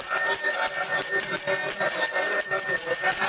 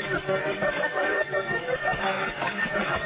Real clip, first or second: first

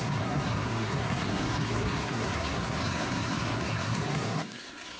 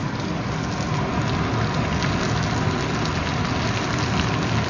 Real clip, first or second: second